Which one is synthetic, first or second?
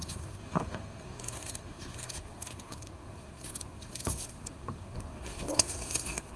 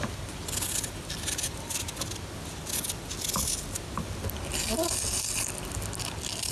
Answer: first